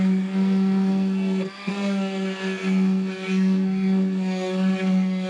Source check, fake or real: fake